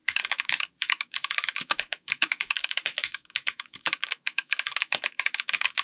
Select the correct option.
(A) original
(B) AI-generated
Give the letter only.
B